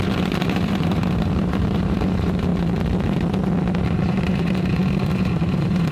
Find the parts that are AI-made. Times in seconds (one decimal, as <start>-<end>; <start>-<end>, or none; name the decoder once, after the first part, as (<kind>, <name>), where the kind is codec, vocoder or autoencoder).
0.0-2.5 (vocoder, BigVGAN v2); 3.8-5.9